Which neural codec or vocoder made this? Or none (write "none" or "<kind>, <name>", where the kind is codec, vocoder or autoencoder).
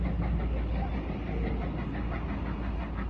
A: none